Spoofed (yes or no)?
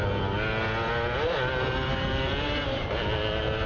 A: no